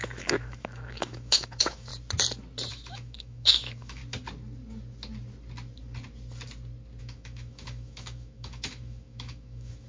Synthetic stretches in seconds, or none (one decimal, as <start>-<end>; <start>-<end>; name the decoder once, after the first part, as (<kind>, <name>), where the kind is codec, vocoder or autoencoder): 0.0-1.9 (autoencoder, DAC-VAE); 2.7-4.0; 7.0-9.9

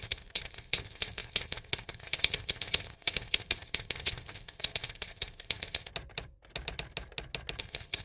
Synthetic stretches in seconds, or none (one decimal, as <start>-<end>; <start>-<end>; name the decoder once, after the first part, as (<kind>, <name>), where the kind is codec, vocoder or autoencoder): 0.0-5.9 (codec, ZipCodec); 7.6-8.0

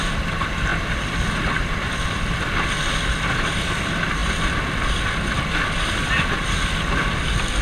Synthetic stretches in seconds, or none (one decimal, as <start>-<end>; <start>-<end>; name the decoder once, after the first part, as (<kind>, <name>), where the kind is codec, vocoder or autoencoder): none

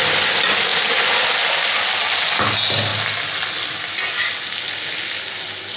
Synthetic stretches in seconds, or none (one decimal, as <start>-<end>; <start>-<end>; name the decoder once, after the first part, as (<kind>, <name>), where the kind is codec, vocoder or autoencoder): none

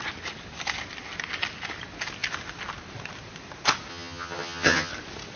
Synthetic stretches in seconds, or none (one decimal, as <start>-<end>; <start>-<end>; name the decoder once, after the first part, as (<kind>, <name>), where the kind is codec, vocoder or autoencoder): 3.9-4.9 (vocoder, HiFi-GAN)

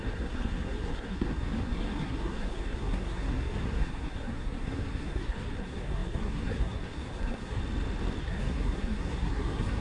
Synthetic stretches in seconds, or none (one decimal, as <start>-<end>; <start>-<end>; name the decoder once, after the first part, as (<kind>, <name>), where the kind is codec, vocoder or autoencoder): 0.0-7.6 (codec, SNAC); 8.2-9.8